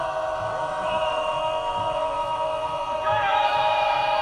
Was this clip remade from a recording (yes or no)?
yes